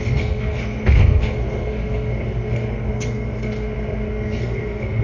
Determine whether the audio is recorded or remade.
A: remade